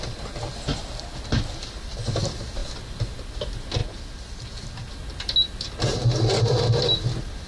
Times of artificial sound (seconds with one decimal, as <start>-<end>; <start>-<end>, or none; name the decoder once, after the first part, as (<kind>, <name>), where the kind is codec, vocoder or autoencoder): none